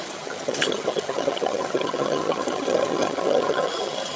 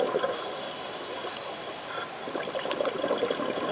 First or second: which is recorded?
second